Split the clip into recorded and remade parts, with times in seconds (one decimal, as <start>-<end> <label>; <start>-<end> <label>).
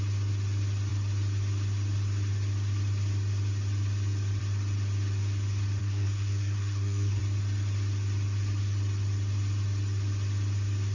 0.0-5.8 recorded; 5.8-7.2 remade; 7.2-10.9 recorded